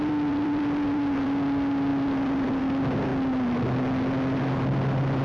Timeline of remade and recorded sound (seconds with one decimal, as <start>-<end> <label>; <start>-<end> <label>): 0.0-3.1 remade; 3.1-4.4 recorded; 4.4-5.2 remade